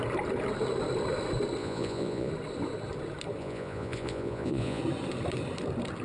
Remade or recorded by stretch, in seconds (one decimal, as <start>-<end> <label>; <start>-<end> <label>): 0.0-1.6 recorded; 1.6-2.3 remade; 2.3-3.4 recorded; 3.4-4.8 remade; 4.8-6.0 recorded